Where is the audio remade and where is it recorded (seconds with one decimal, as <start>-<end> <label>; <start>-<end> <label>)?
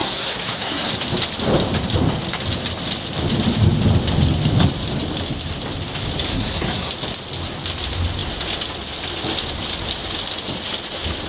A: 0.0-0.9 remade; 0.9-6.3 recorded; 6.3-6.9 remade; 6.9-11.3 recorded